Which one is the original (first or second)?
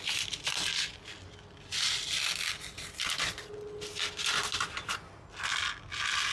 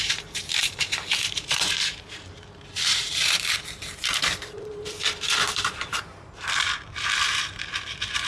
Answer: first